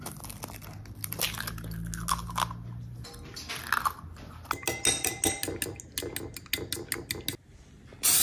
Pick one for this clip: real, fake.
real